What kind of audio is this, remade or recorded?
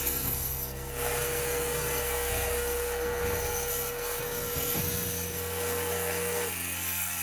remade